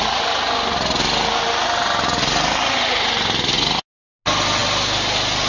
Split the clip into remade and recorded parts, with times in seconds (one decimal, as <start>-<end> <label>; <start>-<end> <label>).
0.0-5.5 recorded